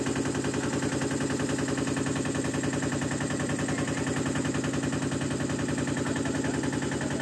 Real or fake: real